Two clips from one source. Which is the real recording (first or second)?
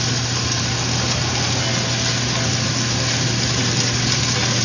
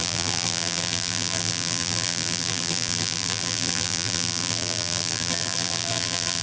first